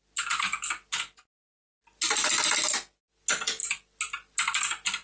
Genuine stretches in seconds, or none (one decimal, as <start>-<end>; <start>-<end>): 0.0-5.0